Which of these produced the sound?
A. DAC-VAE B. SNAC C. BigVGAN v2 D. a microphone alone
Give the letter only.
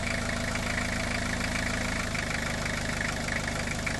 D